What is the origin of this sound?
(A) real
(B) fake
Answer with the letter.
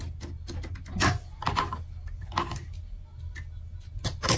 A